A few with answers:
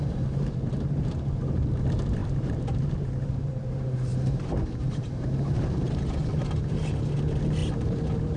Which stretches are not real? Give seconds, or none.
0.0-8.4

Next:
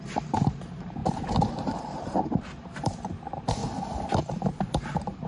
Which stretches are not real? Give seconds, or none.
0.0-1.0; 2.0-3.6; 4.3-5.3

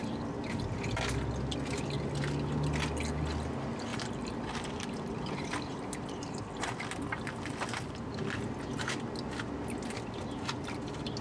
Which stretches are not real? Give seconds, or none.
3.9-6.8